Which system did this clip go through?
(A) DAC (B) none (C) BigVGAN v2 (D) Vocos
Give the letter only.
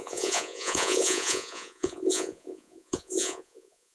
D